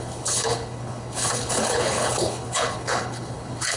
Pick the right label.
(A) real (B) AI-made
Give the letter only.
B